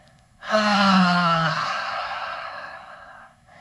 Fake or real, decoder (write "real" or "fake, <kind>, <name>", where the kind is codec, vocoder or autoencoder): fake, codec, SNAC